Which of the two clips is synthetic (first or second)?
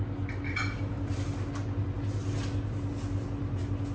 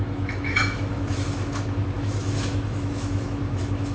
second